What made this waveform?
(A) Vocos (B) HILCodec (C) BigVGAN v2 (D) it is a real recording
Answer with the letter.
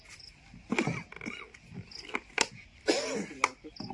D